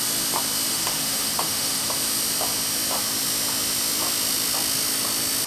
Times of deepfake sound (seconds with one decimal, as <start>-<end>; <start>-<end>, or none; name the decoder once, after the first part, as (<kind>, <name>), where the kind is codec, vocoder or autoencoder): 0.7-1.9 (autoencoder, DAC-VAE)